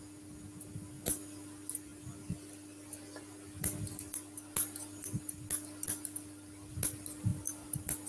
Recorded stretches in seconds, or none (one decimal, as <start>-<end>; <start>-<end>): 0.0-8.1